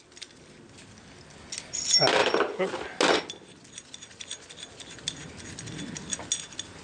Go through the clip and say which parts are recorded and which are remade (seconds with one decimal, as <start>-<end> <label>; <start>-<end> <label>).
0.0-2.2 recorded; 2.2-3.0 remade; 3.0-6.8 recorded